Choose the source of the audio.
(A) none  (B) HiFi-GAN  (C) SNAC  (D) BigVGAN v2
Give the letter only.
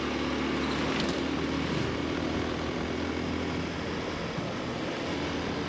A